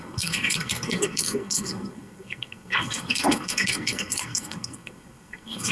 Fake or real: fake